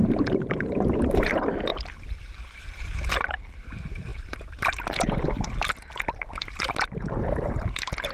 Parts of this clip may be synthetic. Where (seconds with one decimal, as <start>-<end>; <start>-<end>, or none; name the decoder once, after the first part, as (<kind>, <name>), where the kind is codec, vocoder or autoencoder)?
0.0-1.7 (vocoder, BigVGAN v2); 2.2-8.1